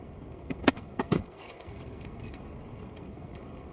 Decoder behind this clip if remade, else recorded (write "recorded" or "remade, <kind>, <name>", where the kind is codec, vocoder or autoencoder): remade, codec, SNAC